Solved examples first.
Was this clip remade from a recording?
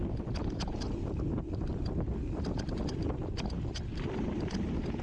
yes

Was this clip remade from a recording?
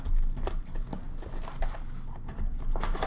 no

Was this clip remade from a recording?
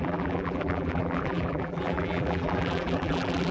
yes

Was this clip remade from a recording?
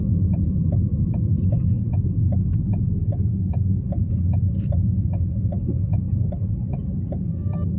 no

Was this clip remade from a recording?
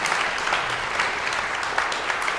no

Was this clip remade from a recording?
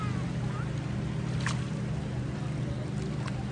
no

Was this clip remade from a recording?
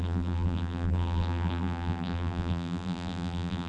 yes